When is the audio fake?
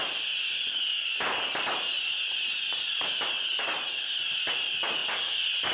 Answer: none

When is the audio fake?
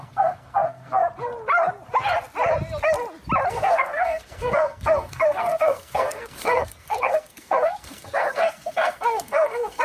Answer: 0.0-1.0; 3.5-9.8